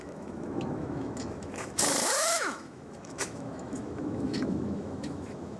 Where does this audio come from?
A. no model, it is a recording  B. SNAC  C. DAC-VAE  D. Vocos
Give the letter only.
C